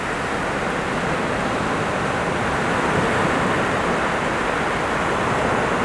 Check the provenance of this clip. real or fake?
real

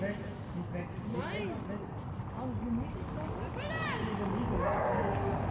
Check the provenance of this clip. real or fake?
real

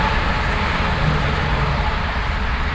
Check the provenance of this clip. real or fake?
real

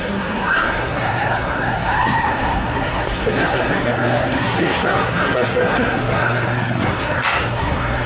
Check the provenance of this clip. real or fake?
fake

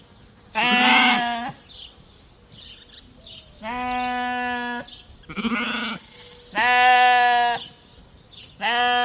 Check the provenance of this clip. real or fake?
real